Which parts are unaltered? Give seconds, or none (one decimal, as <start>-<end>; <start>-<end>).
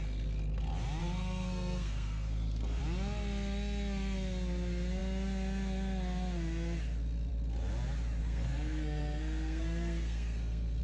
0.0-1.0; 2.8-8.2